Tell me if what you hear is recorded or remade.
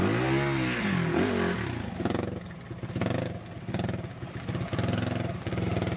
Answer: recorded